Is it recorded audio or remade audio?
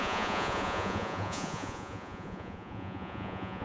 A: remade